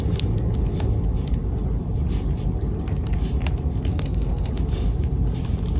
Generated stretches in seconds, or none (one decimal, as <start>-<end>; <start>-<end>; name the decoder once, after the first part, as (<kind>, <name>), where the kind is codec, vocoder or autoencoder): 3.9-4.5 (codec, SNAC)